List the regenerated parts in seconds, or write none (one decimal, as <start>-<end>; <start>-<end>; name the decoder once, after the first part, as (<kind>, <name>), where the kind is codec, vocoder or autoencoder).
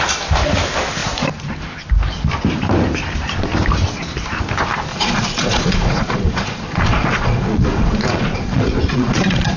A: 4.9-9.6 (vocoder, Vocos)